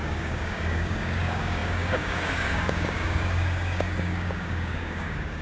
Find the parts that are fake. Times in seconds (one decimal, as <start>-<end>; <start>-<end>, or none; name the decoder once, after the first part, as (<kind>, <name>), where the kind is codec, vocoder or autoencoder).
0.0-5.4 (codec, DAC)